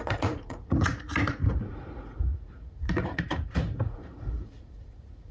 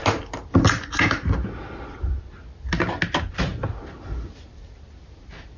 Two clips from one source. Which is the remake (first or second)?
first